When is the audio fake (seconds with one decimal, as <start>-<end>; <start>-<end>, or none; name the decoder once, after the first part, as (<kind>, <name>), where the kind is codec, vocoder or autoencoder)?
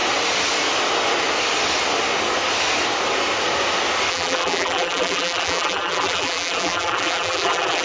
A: 4.1-7.8 (vocoder, BigVGAN v2)